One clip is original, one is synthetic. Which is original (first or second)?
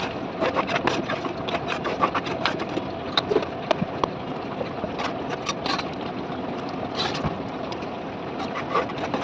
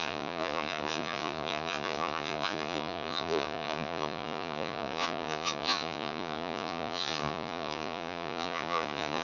first